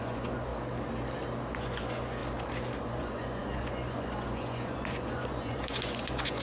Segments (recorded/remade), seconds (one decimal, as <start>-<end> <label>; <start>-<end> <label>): 0.0-0.5 remade; 0.5-1.6 recorded; 1.6-2.2 remade; 2.2-2.8 recorded; 2.8-6.4 remade